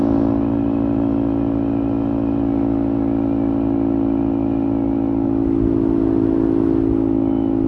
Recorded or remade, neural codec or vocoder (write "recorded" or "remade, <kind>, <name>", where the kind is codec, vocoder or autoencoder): recorded